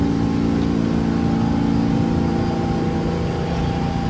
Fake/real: real